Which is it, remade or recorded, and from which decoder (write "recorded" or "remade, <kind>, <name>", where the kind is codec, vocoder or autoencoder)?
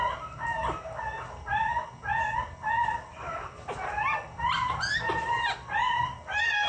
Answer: recorded